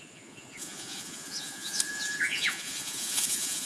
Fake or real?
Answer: fake